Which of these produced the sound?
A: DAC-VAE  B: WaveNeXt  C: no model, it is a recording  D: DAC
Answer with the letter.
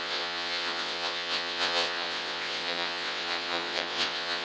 B